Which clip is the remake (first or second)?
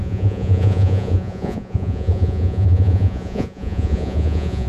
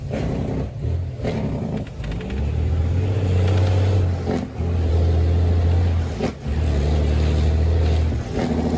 first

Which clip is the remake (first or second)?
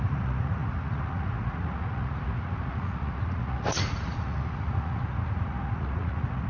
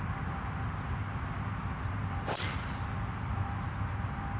first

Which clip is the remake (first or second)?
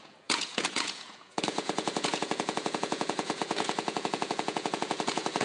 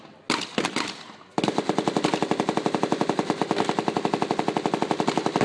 first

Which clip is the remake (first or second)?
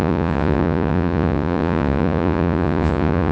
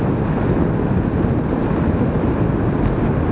first